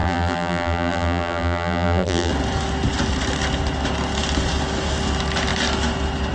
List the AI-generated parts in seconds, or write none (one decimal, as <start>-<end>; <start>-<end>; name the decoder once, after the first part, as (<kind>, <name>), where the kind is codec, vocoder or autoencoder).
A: 0.0-2.3 (vocoder, BigVGAN v2)